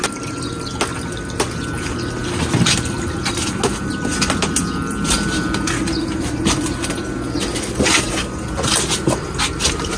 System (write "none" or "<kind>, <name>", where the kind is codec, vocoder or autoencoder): none